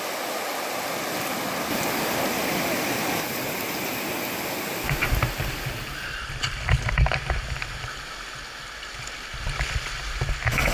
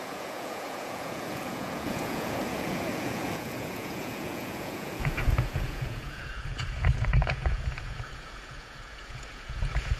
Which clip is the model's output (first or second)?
second